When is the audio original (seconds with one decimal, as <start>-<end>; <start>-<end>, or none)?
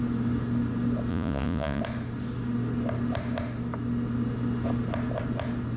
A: 0.0-1.1; 1.8-5.8